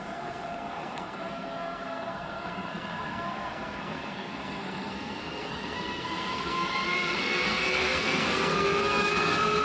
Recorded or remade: remade